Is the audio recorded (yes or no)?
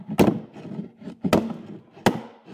yes